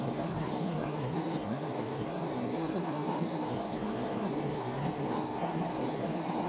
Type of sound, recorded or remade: remade